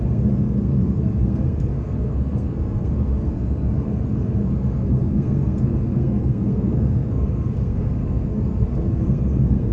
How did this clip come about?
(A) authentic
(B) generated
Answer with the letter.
B